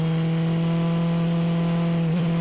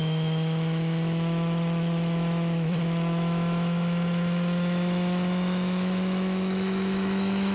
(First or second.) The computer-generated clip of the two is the second